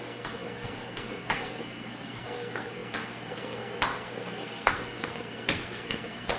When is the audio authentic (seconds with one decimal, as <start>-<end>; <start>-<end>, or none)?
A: none